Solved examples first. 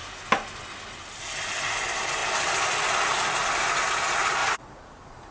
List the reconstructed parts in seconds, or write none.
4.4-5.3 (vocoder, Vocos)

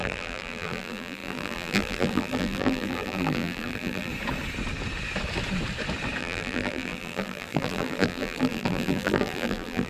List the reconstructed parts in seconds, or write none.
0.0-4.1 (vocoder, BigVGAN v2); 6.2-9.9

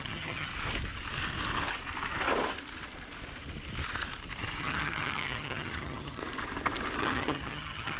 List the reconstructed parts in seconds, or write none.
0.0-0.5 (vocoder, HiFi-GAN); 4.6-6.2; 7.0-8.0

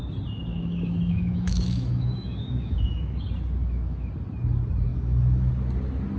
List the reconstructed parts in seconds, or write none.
0.5-3.2 (autoencoder, DAC-VAE); 3.6-4.1; 4.9-5.5

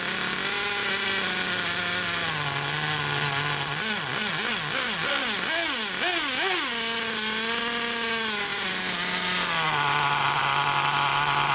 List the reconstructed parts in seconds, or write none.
none